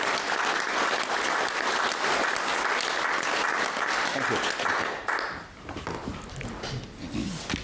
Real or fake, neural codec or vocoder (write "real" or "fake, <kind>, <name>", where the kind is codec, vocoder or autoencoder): real